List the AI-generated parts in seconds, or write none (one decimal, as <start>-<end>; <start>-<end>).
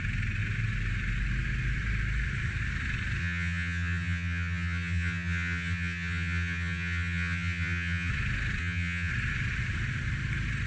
3.2-8.1; 8.6-9.1